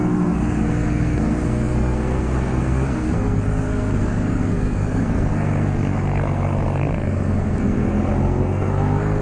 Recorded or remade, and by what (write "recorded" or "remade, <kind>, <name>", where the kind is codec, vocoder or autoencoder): remade, codec, SNAC